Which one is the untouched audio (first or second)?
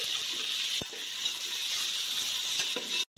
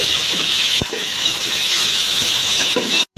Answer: first